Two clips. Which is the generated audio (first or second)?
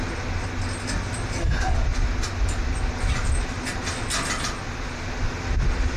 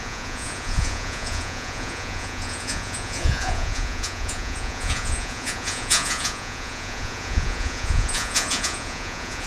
second